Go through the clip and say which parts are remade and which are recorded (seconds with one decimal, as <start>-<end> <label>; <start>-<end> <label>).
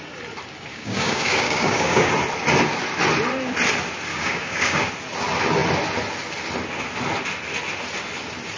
0.0-0.7 recorded; 0.7-2.1 remade; 2.1-4.1 recorded; 4.1-4.9 remade; 4.9-8.6 recorded